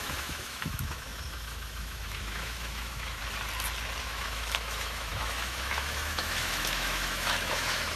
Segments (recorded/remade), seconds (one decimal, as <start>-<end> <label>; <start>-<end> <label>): 0.0-3.2 remade; 3.2-4.0 recorded; 4.0-8.0 remade